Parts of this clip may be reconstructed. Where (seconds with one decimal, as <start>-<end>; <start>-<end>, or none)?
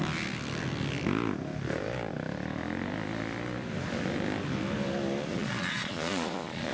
5.3-6.7